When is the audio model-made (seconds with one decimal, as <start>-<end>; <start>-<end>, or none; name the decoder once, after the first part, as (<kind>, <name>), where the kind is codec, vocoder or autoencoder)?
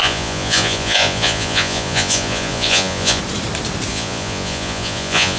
0.0-3.2 (vocoder, Vocos); 3.9-5.4